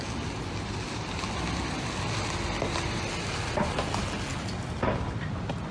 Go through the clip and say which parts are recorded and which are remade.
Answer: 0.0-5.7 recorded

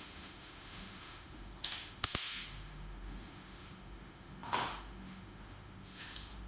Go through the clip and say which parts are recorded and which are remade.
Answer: 0.0-6.5 remade